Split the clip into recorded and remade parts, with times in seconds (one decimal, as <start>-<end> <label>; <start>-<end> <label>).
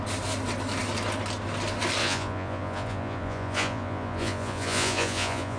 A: 0.0-2.0 recorded; 2.0-5.6 remade